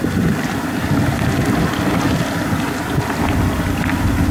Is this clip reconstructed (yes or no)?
no